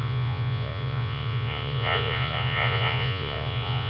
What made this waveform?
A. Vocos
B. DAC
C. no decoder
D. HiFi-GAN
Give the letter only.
A